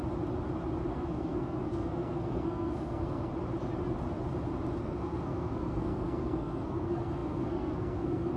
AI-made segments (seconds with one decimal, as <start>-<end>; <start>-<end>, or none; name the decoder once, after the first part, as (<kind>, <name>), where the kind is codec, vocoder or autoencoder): 0.9-3.3 (codec, SNAC); 4.8-8.4